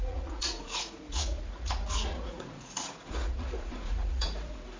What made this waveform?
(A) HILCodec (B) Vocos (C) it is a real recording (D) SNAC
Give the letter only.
B